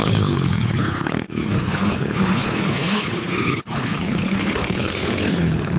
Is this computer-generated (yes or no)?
yes